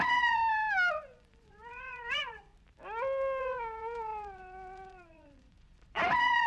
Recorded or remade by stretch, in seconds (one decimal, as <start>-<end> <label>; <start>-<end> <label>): 0.0-0.4 remade; 0.4-0.9 recorded; 0.9-2.5 remade; 2.5-3.4 recorded; 3.4-6.5 remade